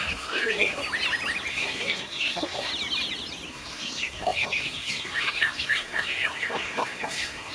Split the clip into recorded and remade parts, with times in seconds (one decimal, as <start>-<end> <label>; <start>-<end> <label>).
0.0-0.8 remade; 0.8-1.5 recorded; 1.5-2.7 remade; 2.7-3.5 recorded; 3.5-7.5 remade